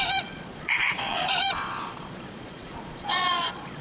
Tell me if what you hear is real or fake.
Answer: fake